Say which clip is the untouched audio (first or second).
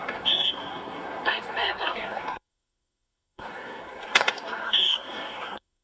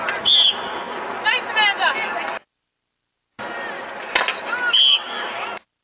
second